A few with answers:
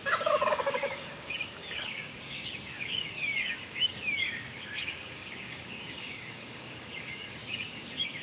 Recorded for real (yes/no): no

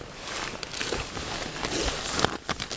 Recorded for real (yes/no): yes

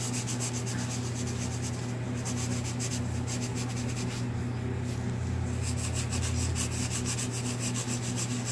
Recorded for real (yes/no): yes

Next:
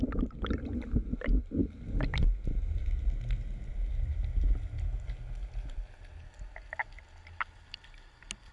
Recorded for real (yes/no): yes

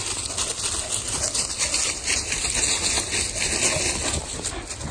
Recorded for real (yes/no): yes